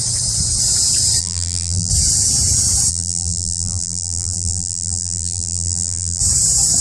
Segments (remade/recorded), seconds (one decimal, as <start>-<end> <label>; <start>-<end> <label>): 0.0-1.2 recorded; 1.2-1.9 remade; 1.9-2.9 recorded; 2.9-6.2 remade; 6.2-6.8 recorded